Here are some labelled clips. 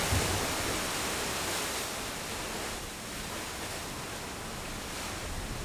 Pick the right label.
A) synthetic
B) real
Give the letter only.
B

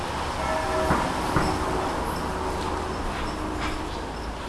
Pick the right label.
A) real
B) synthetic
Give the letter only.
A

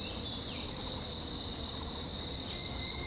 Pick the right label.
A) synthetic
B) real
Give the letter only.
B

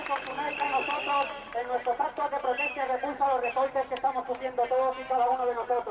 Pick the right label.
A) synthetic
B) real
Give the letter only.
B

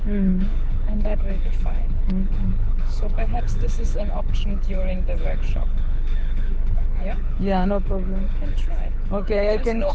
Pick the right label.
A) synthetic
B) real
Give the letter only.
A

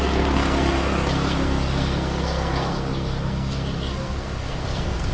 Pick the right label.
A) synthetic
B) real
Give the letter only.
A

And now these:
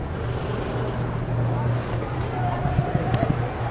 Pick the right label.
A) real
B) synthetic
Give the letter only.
A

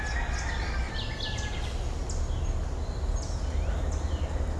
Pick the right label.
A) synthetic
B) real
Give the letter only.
B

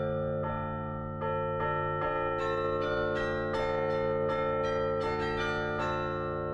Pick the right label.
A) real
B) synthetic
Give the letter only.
A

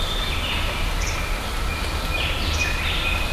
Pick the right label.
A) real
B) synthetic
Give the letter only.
A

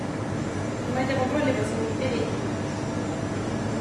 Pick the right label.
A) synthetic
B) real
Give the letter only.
B